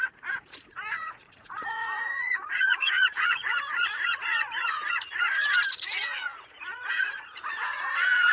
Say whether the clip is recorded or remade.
remade